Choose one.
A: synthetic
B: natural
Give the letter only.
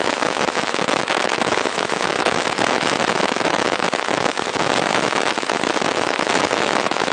A